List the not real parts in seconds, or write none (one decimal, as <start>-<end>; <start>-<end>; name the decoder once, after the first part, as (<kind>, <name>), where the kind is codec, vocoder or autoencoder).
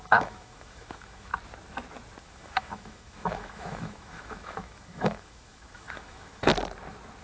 0.0-1.3 (autoencoder, DAC-VAE); 2.2-6.5